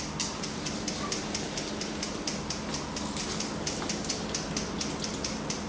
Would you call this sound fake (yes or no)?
no